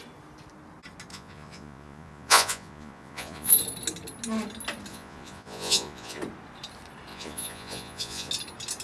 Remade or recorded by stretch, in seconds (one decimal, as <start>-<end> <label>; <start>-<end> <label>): 0.0-1.1 recorded; 1.1-3.5 remade; 3.5-4.9 recorded; 4.9-6.2 remade; 6.2-7.1 recorded; 7.1-8.3 remade; 8.3-8.8 recorded